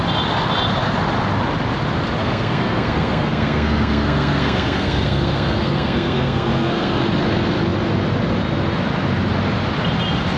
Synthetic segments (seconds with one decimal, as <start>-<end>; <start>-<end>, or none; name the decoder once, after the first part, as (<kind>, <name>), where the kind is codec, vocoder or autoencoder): 2.2-7.0 (codec, SNAC)